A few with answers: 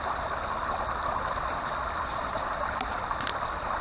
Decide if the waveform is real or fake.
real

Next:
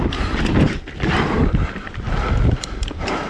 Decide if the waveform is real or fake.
real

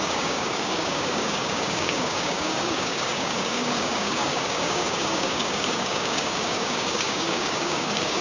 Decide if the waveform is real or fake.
fake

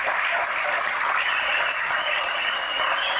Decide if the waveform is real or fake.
real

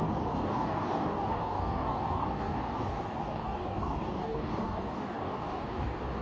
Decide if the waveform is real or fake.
fake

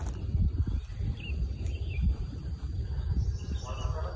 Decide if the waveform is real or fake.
real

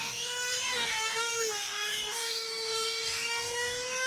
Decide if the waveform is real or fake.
fake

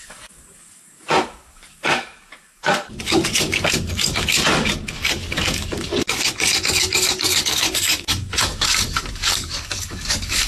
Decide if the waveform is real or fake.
fake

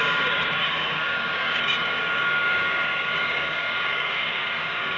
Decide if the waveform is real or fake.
fake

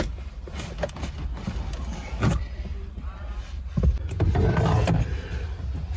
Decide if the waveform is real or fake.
real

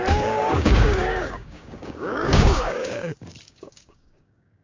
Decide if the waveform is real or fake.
fake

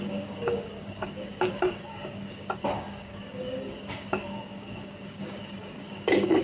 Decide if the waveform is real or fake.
fake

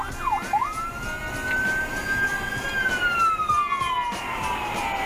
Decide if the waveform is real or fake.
real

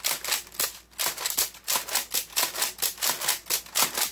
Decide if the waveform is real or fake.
real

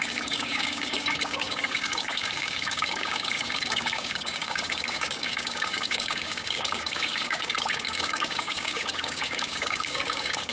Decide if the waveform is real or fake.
fake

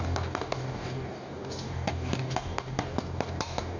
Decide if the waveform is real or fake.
fake